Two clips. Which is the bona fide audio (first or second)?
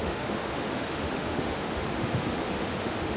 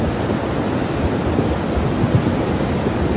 second